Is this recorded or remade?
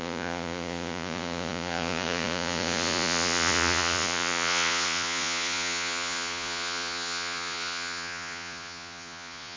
remade